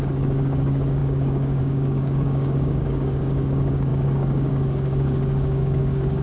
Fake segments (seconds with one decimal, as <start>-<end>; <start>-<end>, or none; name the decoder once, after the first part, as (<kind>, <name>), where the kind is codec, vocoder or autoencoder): 0.0-6.2 (codec, DAC)